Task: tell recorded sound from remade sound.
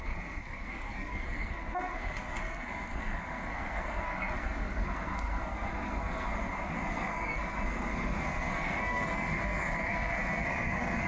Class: remade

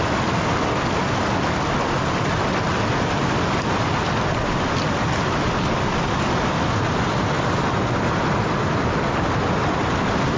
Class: recorded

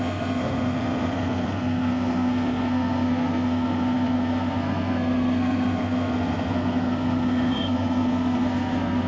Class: remade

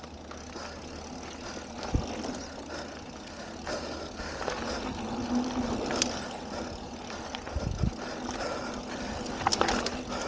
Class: recorded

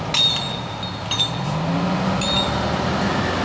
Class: recorded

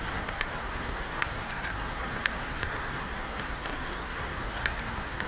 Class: remade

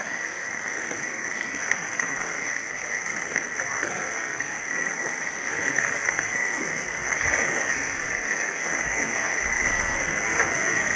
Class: remade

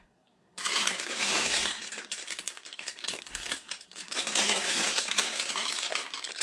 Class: remade